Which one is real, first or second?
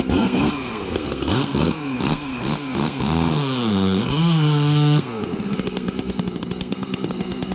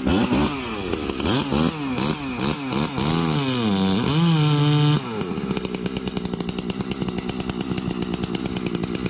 second